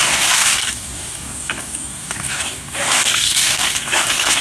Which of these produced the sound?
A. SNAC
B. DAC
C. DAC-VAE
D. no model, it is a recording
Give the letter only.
B